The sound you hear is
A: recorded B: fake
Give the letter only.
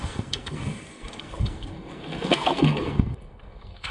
B